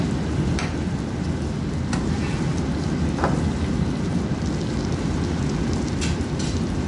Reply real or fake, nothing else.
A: real